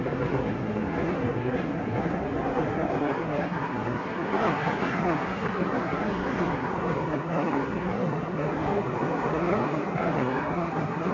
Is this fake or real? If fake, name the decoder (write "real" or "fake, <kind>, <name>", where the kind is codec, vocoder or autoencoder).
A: fake, codec, SNAC